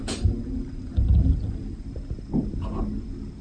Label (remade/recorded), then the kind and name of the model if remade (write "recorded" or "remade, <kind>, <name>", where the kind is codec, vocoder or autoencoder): recorded